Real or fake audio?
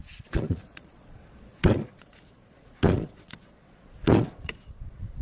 fake